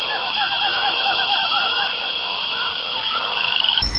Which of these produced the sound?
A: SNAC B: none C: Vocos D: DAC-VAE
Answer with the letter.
D